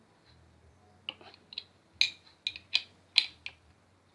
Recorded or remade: recorded